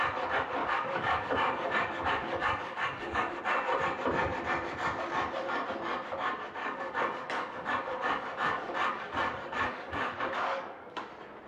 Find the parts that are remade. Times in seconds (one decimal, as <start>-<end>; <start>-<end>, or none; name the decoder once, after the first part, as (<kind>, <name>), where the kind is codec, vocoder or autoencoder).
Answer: 0.6-3.4 (codec, DAC); 6.6-11.1